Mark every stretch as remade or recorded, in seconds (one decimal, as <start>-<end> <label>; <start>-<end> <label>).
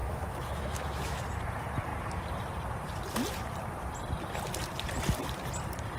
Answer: 0.0-1.2 remade; 1.2-6.0 recorded